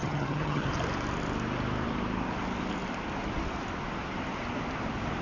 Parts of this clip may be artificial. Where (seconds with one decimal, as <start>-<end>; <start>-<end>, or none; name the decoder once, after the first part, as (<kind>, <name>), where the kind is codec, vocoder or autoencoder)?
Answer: 0.0-0.7 (vocoder, HiFi-GAN)